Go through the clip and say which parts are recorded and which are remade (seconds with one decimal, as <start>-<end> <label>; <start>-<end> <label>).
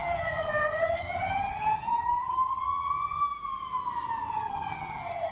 0.0-3.2 remade; 3.2-4.3 recorded; 4.3-5.3 remade